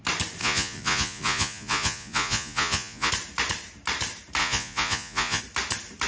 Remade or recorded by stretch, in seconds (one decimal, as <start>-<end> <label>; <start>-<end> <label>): 0.0-0.4 recorded; 0.4-3.1 remade; 3.1-4.4 recorded; 4.4-5.4 remade; 5.4-6.1 recorded